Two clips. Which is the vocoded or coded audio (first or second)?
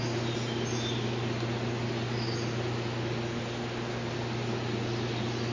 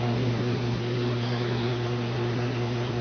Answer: second